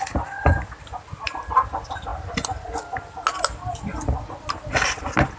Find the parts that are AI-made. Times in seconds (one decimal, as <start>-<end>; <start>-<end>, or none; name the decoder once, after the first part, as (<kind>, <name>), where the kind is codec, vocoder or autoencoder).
none